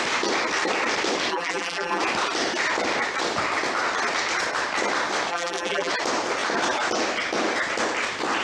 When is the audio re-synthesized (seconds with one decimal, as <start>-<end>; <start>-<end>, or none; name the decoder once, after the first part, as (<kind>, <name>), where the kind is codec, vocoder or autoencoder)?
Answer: 1.3-2.0 (vocoder, BigVGAN v2); 5.3-5.9